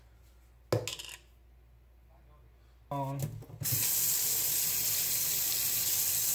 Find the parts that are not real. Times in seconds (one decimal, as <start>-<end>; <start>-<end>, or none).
none